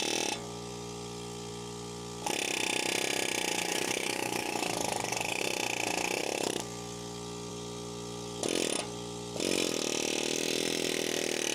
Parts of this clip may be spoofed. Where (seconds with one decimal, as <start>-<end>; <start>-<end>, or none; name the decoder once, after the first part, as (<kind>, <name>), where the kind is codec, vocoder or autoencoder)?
3.5-5.4 (codec, DAC)